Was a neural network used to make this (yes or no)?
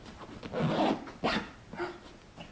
no